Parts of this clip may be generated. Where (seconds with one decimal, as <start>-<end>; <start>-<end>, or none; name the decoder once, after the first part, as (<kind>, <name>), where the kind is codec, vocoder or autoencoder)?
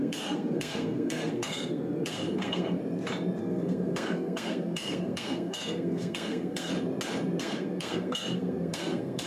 0.0-2.8 (codec, SNAC); 3.4-6.7; 7.4-9.3